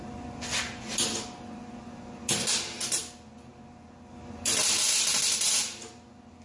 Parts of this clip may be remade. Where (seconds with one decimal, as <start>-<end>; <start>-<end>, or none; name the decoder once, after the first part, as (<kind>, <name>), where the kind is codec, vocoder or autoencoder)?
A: none